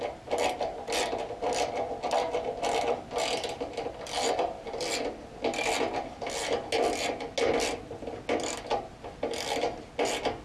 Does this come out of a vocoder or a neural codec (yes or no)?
no